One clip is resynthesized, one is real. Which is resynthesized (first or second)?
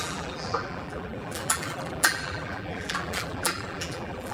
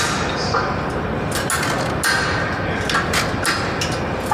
first